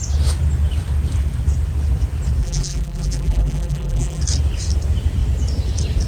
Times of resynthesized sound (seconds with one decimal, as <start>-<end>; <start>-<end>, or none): 2.4-4.2